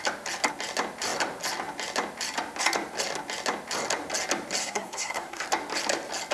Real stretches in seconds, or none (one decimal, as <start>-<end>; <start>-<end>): 0.0-4.6; 5.4-6.3